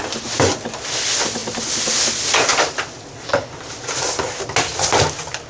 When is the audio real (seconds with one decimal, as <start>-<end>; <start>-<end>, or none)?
0.0-5.5